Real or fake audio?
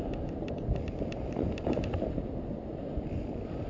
real